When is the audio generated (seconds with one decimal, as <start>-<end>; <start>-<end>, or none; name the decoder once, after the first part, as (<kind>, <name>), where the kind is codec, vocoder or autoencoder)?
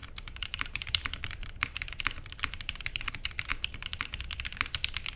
0.0-3.1 (vocoder, BigVGAN v2); 3.5-4.0